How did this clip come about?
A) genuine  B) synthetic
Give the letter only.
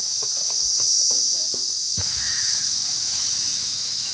B